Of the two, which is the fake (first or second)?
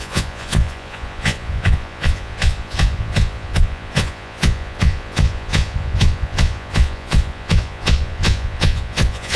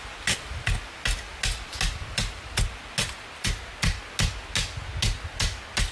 first